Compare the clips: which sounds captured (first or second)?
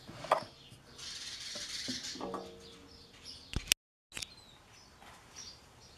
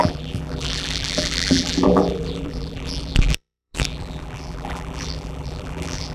first